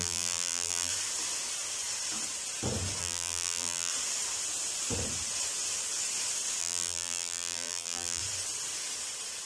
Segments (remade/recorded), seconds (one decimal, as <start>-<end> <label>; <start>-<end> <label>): 0.0-0.9 remade; 0.9-3.0 recorded; 3.0-3.9 remade; 3.9-6.6 recorded; 6.6-8.2 remade; 8.2-9.5 recorded

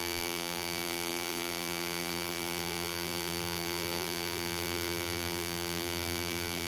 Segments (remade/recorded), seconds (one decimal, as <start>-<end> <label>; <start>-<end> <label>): 0.0-6.7 remade

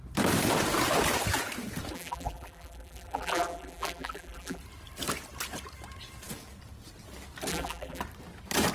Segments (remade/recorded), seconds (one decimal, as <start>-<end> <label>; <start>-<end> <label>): 0.0-1.9 recorded; 1.9-4.6 remade; 4.6-7.5 recorded; 7.5-8.0 remade; 8.0-8.7 recorded

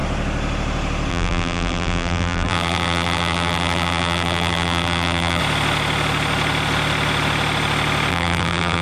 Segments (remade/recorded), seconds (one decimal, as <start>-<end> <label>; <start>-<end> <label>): 0.0-1.1 recorded; 1.1-5.4 remade; 5.4-8.1 recorded; 8.1-8.8 remade